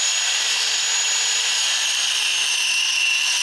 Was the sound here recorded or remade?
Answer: recorded